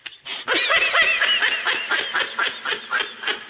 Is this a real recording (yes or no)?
yes